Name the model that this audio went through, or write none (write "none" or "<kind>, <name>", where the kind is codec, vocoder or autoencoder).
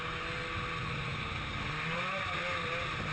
none